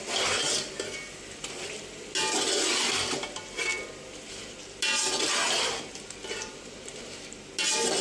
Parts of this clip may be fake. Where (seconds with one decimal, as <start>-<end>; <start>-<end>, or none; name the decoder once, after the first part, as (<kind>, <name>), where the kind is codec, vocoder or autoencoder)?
none